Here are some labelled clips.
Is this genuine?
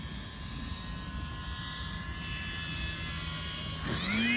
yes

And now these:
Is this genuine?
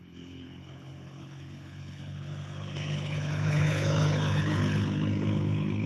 no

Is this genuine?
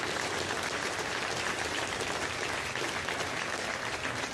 yes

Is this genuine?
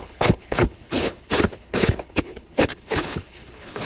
no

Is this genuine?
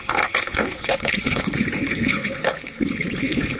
no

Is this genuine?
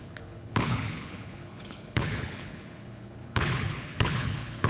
no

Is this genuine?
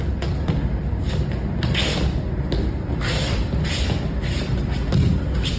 yes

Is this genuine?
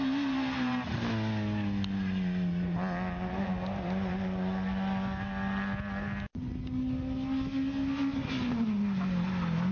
yes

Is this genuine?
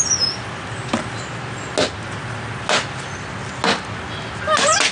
yes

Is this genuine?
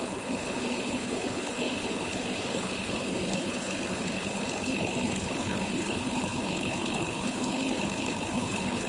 no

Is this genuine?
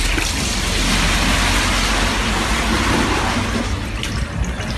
yes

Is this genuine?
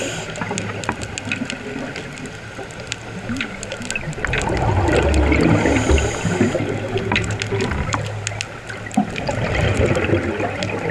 yes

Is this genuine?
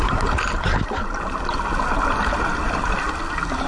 yes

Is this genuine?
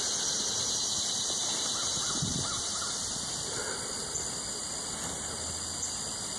yes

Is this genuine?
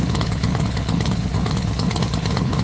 no